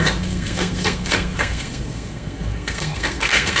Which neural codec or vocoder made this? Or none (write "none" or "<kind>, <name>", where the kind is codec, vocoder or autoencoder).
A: codec, SNAC